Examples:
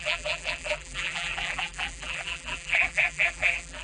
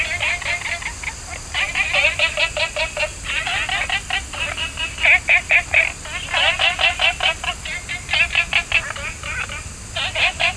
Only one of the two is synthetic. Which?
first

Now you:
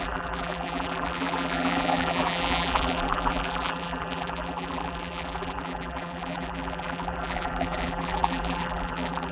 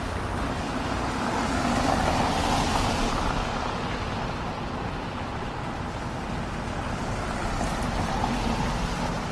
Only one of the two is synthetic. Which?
first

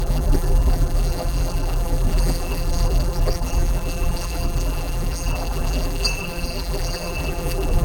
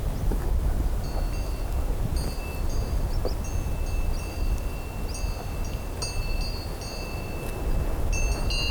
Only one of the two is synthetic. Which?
first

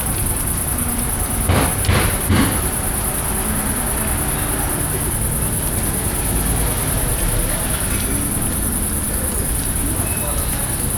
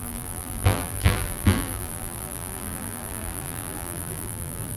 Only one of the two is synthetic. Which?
second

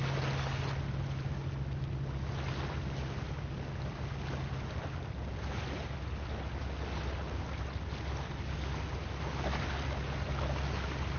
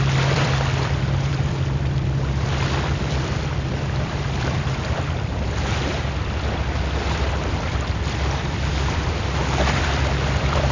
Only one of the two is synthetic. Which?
second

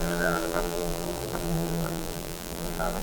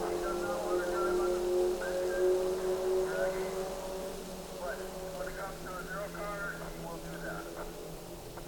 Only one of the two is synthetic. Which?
first